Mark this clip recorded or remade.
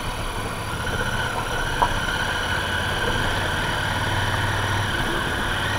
recorded